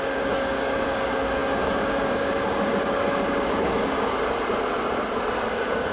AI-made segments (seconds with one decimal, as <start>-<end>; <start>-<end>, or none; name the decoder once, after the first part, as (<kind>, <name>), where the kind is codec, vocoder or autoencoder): 0.0-4.1 (codec, DAC); 5.5-5.9